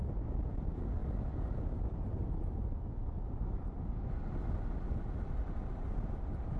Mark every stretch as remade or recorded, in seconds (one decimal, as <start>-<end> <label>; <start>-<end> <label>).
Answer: 0.0-6.6 recorded